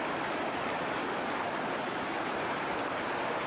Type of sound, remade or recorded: recorded